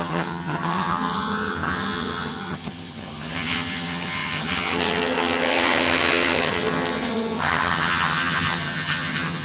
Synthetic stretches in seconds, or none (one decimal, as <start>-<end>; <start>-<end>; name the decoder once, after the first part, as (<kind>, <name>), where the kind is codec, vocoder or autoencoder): 0.0-9.4 (vocoder, HiFi-GAN)